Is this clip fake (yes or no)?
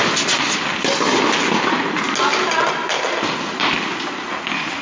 no